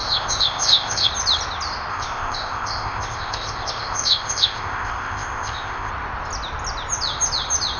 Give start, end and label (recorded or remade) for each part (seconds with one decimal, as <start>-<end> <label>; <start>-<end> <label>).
0.0-1.1 remade; 1.1-1.9 recorded; 1.9-5.9 remade; 5.9-7.8 recorded